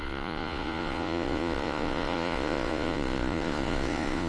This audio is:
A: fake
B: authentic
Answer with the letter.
A